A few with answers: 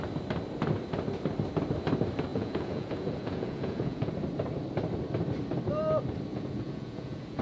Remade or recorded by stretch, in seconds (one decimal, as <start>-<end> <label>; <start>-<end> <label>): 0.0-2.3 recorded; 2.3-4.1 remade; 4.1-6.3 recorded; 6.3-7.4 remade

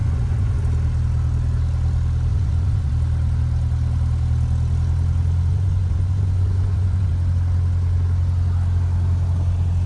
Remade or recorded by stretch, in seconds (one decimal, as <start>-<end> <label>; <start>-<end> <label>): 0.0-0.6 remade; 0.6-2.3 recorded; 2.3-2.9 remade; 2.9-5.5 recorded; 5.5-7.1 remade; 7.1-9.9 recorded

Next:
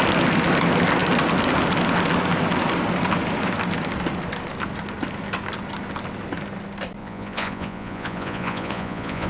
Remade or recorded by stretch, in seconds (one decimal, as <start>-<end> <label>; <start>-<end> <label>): 0.0-7.0 recorded; 7.0-9.3 remade

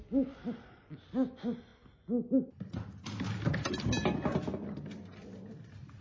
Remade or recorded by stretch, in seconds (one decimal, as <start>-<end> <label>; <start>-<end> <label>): 0.0-6.0 recorded

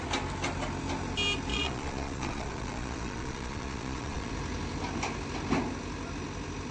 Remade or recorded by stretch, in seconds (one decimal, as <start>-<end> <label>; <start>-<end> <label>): 0.0-1.5 recorded; 1.5-4.3 remade; 4.3-6.7 recorded